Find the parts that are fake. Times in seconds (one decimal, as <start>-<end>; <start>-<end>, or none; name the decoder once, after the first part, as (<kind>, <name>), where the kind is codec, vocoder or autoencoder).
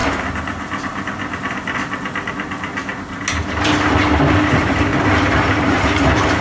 2.3-2.7 (vocoder, BigVGAN v2); 4.5-4.9; 5.4-6.4